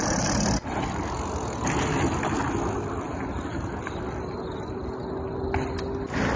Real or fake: real